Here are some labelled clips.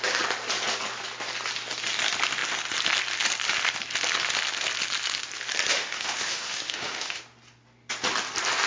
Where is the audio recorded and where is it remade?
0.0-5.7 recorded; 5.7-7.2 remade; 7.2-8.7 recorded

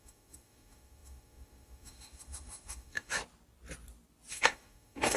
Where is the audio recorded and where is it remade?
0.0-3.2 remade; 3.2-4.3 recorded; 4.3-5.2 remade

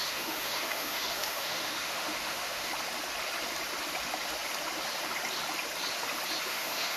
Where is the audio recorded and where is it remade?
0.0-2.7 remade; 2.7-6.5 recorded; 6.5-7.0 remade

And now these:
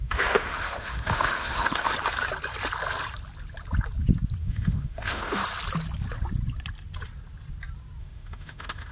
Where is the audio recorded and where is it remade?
0.0-1.9 remade; 1.9-4.4 recorded; 4.4-5.4 remade; 5.4-8.0 recorded; 8.0-8.9 remade

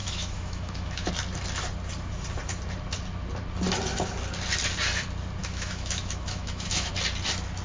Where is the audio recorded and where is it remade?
0.0-1.1 remade; 1.1-5.4 recorded; 5.4-6.9 remade; 6.9-7.6 recorded

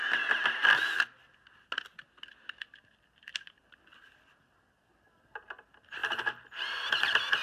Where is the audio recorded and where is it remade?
0.0-7.4 recorded

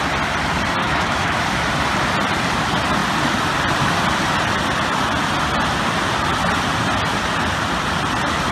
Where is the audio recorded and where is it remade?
0.0-0.8 recorded; 0.8-1.4 remade; 1.4-8.5 recorded